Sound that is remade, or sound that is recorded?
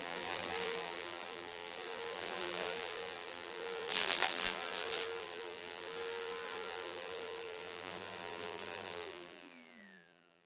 remade